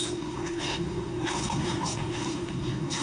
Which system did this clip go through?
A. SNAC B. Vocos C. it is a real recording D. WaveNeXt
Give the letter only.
A